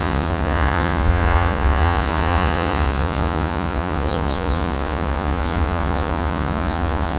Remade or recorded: remade